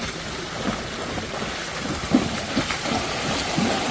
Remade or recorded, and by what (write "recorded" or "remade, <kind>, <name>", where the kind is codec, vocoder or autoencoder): recorded